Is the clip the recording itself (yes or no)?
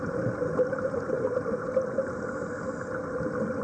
yes